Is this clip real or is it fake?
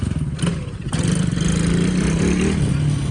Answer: real